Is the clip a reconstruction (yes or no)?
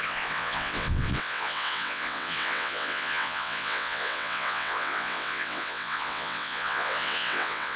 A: yes